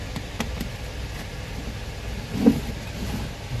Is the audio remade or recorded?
recorded